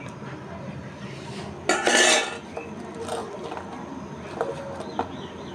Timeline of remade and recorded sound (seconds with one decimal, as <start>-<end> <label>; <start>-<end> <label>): 0.0-5.5 recorded